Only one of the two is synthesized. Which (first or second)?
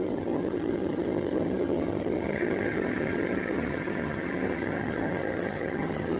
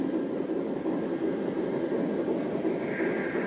first